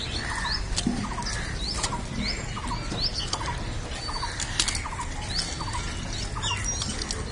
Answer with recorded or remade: recorded